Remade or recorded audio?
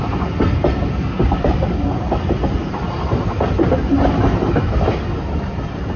recorded